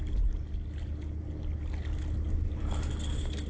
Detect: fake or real real